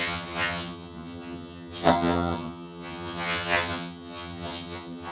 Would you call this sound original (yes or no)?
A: no